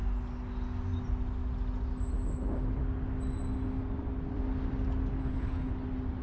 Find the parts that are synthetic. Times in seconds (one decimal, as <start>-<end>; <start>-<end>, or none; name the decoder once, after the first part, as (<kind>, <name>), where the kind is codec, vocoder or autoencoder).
5.2-5.7 (codec, HILCodec)